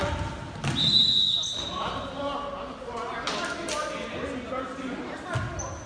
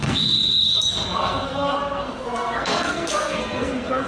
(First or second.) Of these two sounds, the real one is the first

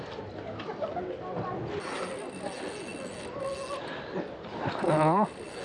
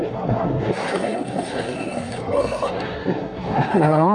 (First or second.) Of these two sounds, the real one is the first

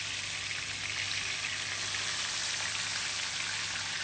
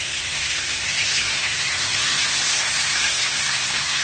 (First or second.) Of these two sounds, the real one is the first